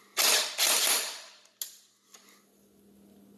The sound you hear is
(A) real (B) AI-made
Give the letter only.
A